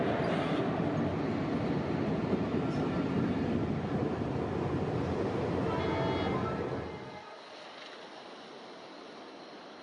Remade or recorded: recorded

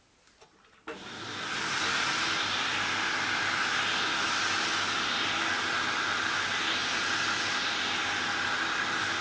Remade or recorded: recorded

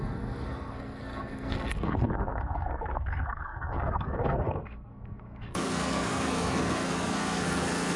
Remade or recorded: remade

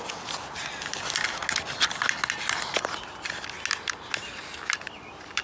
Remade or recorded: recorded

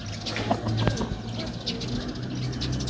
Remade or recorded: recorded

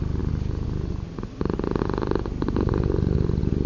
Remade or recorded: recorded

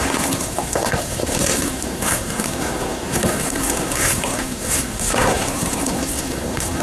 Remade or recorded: remade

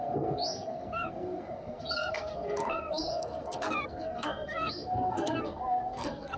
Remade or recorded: remade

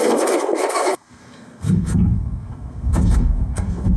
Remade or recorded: remade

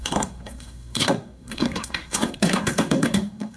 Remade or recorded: remade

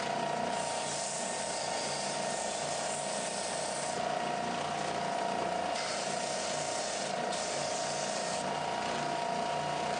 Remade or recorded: recorded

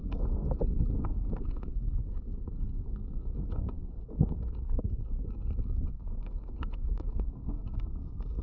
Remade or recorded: remade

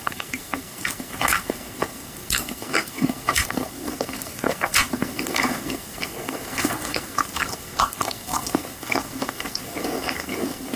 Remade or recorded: remade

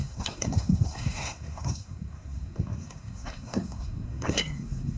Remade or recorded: remade